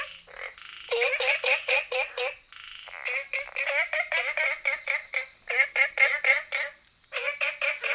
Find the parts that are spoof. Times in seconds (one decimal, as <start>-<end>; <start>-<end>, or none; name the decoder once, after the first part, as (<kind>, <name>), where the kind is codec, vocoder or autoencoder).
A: 1.6-2.2 (vocoder, Vocos)